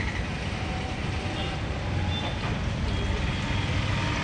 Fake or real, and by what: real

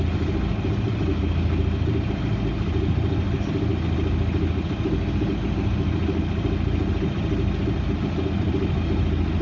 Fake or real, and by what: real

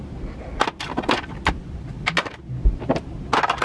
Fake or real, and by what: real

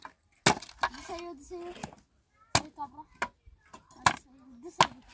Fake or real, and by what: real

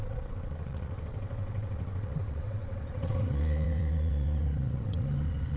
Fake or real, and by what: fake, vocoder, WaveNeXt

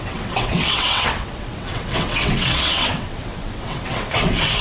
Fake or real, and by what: fake, vocoder, WaveNeXt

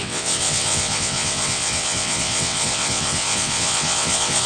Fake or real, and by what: fake, vocoder, WaveNeXt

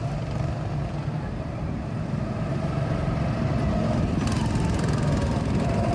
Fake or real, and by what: real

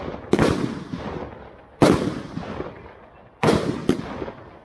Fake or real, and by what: real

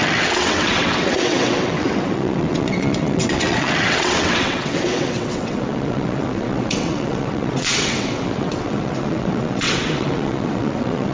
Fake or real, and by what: fake, vocoder, WaveNeXt